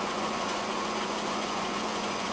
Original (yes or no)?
no